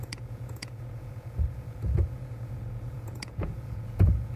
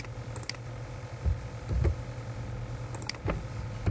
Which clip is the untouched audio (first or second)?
second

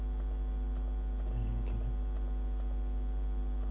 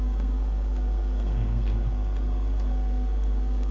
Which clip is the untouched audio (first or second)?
first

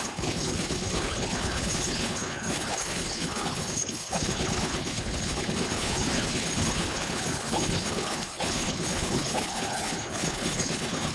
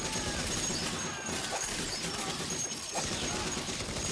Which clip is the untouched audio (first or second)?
second